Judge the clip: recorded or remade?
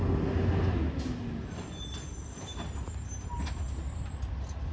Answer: recorded